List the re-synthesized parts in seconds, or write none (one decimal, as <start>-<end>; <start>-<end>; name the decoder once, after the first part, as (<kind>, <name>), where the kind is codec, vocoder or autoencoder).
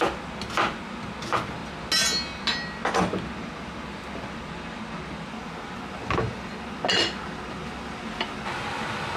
none